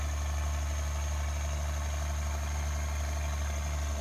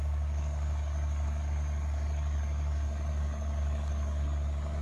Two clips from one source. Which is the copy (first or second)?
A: second